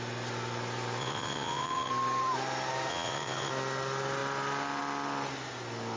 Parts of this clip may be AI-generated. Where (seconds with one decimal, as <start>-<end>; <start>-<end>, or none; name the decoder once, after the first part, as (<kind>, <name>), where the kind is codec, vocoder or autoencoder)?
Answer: 1.0-1.9 (vocoder, WaveNeXt); 2.9-3.5